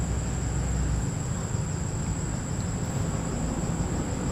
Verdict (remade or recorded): recorded